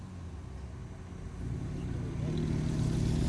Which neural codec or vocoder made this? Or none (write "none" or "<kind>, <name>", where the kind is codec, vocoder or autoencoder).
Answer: none